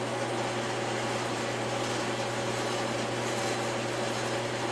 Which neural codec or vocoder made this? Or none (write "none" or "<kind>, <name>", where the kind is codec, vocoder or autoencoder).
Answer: none